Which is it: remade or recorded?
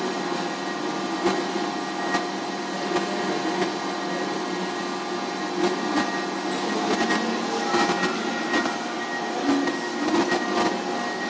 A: recorded